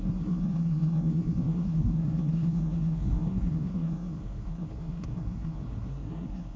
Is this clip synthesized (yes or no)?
yes